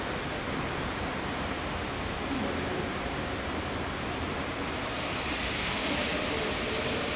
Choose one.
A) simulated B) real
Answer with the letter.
B